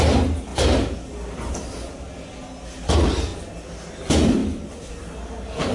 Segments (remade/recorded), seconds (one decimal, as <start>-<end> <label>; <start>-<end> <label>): 0.0-5.7 recorded